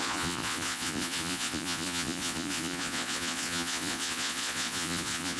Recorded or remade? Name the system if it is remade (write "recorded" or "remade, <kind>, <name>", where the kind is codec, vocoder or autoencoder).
remade, vocoder, Vocos